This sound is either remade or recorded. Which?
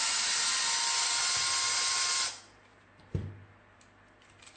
recorded